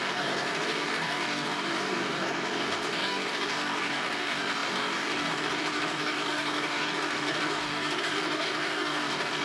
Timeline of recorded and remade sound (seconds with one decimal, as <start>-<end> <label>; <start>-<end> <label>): 0.0-9.4 remade